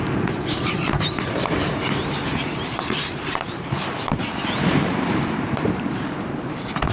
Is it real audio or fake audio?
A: fake